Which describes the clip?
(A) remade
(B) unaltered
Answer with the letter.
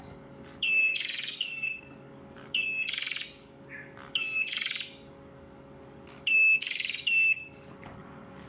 A